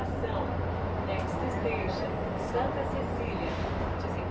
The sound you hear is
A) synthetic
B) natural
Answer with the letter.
B